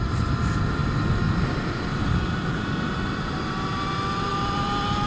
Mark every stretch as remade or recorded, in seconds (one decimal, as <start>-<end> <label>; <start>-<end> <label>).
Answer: 0.0-5.1 recorded